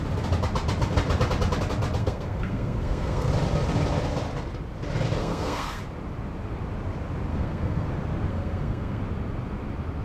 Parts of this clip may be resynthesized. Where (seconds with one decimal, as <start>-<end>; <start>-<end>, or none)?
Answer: 2.0-3.3; 5.2-5.8; 7.3-7.9; 8.3-9.0

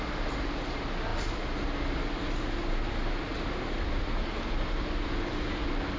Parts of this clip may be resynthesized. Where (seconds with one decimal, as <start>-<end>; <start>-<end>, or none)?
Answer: none

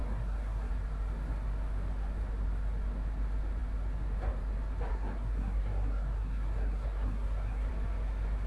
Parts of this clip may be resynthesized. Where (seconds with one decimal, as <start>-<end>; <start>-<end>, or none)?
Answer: 0.0-0.7; 4.9-7.7

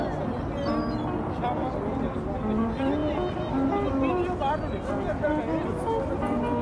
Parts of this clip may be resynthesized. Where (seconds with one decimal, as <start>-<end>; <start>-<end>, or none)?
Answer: none

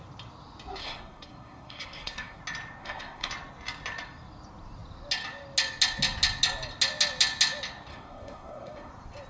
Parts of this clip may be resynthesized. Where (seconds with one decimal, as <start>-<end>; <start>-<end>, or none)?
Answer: 0.8-2.4; 2.8-3.3; 7.9-8.9

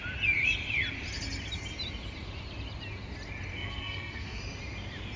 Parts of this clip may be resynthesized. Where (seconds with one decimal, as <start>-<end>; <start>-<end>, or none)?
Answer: 3.5-4.4

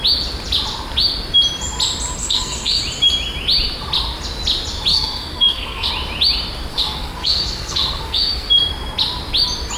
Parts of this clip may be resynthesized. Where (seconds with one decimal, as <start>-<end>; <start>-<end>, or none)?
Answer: 2.2-2.8; 4.9-5.9; 6.7-8.5